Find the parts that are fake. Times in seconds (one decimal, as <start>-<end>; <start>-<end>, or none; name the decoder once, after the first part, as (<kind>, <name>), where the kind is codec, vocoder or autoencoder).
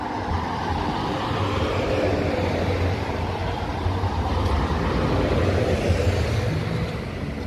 none